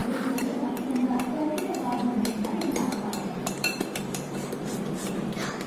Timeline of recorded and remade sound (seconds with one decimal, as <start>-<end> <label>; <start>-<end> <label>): 0.0-0.9 remade; 0.9-2.4 recorded; 2.4-4.7 remade; 4.7-5.7 recorded